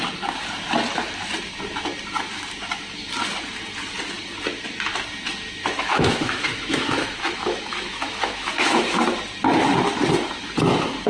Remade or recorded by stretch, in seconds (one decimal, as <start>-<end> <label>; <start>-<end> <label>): 0.0-5.6 recorded; 5.6-8.8 remade; 8.8-11.1 recorded